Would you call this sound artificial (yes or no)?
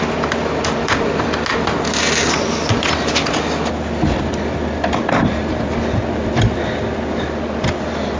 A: no